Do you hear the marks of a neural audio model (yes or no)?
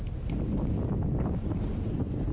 no